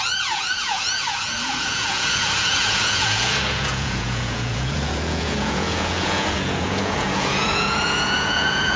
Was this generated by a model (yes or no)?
yes